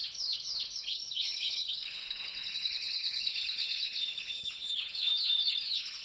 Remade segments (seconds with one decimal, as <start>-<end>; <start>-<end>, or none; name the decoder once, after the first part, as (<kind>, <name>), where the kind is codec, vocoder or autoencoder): 0.0-6.0 (codec, HILCodec)